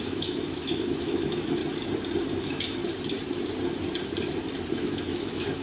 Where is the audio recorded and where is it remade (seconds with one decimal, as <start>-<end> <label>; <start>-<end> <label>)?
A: 0.0-1.6 remade; 1.6-2.3 recorded; 2.3-2.8 remade; 2.8-4.7 recorded; 4.7-5.6 remade